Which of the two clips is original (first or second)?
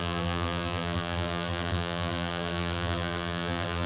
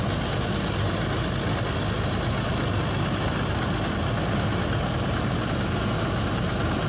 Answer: second